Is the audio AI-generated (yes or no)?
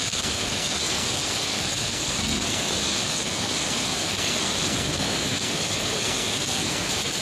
yes